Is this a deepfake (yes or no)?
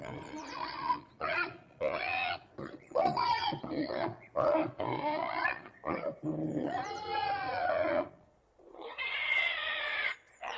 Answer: yes